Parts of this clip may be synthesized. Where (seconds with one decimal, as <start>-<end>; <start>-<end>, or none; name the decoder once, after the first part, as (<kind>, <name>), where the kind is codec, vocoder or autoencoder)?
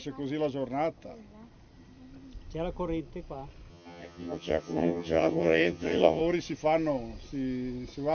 3.7-6.2 (vocoder, HiFi-GAN)